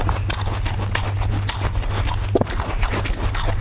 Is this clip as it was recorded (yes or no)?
yes